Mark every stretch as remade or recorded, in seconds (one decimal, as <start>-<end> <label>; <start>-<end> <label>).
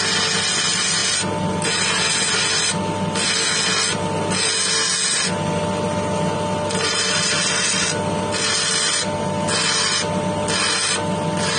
0.0-11.6 recorded